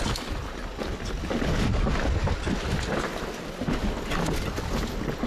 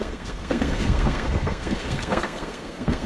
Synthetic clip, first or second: second